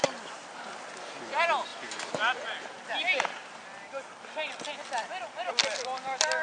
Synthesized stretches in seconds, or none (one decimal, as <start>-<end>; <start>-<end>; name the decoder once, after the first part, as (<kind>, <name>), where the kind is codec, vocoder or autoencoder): none